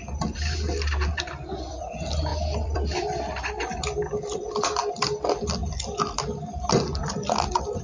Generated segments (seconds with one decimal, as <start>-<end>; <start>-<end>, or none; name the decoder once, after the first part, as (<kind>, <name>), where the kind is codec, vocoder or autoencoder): 1.1-1.9 (vocoder, BigVGAN v2); 2.3-4.9; 5.6-6.2